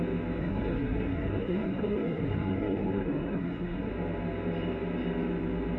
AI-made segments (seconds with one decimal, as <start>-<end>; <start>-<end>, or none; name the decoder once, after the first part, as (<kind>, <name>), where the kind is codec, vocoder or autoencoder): 0.4-3.9 (codec, SNAC)